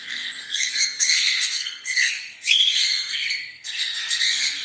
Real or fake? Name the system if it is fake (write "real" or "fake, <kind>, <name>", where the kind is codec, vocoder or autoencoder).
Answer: fake, codec, SNAC